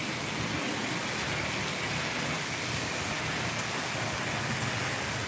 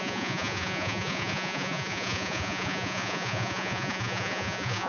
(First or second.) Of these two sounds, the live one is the first